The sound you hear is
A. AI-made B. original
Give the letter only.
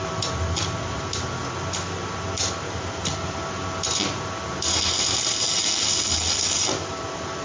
B